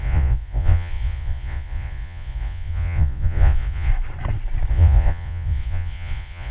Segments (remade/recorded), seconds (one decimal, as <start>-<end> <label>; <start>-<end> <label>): 0.0-3.9 remade; 3.9-4.7 recorded; 4.7-6.5 remade